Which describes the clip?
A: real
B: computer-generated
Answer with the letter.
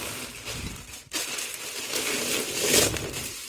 A